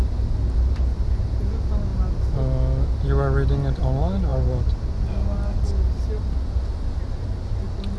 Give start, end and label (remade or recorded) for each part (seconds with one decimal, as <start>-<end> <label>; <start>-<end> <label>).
0.0-8.0 recorded